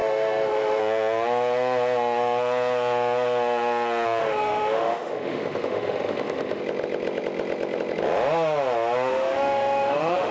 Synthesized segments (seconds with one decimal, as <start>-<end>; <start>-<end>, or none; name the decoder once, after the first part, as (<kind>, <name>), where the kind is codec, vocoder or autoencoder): 0.0-0.8 (autoencoder, DAC-VAE); 4.2-6.6; 9.1-10.3